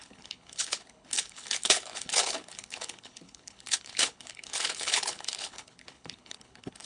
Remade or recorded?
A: remade